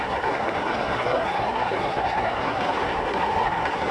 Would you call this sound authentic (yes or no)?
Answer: no